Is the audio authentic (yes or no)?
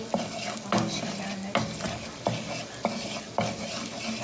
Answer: yes